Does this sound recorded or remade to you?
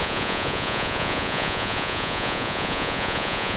remade